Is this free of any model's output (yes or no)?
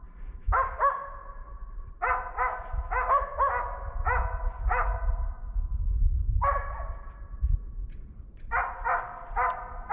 yes